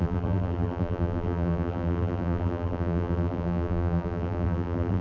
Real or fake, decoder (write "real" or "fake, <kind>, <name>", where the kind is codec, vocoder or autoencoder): fake, vocoder, BigVGAN v2